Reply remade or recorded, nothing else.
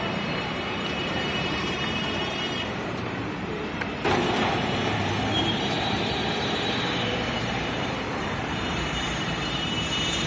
remade